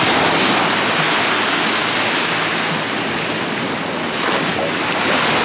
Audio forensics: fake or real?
real